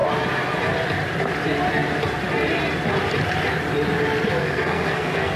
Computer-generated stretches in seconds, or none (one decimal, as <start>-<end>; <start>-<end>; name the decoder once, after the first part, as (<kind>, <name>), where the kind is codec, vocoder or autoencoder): 4.4-5.4 (codec, SNAC)